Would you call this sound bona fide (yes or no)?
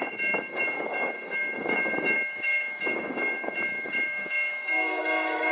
no